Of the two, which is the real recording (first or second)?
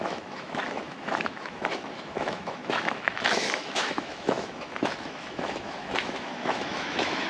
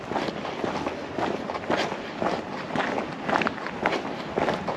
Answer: second